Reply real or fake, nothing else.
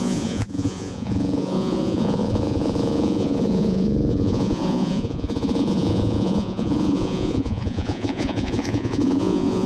fake